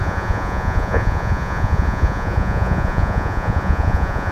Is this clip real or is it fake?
fake